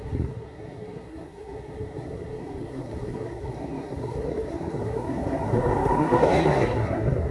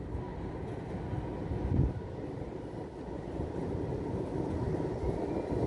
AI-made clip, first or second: first